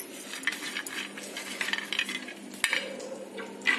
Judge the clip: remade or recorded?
recorded